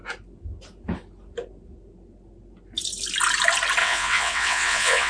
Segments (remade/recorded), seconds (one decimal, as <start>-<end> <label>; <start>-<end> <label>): 0.0-3.8 recorded; 3.8-5.1 remade

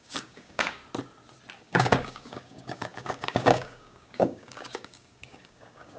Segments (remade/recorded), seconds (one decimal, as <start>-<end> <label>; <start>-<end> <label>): 0.0-0.8 remade; 0.8-1.6 recorded; 1.6-6.0 remade

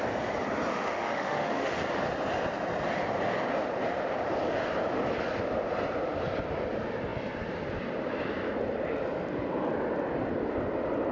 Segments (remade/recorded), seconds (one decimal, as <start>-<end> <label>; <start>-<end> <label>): 0.0-0.7 recorded; 0.7-1.8 remade; 1.8-11.1 recorded

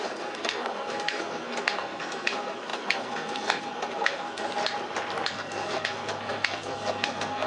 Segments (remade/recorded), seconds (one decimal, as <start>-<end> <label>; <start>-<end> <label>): 0.0-4.5 remade; 4.5-5.3 recorded; 5.3-7.5 remade